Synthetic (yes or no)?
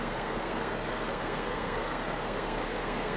yes